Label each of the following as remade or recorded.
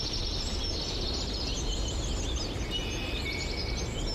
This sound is recorded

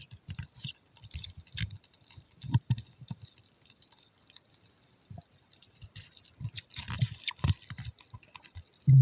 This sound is remade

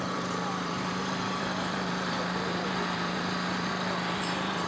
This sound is remade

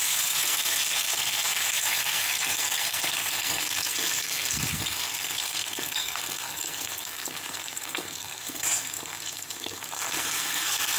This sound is remade